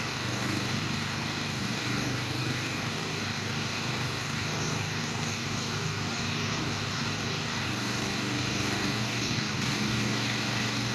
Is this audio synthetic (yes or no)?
yes